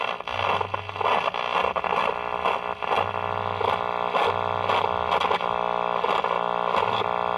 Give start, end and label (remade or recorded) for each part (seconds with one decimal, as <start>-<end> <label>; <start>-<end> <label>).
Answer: 0.0-7.4 recorded